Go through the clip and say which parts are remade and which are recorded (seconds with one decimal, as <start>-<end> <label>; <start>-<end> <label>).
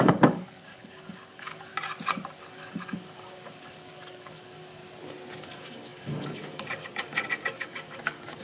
0.0-1.7 remade; 1.7-2.4 recorded; 2.4-4.8 remade; 4.8-5.4 recorded; 5.4-8.4 remade